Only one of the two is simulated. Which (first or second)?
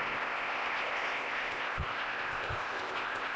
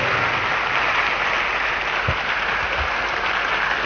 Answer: first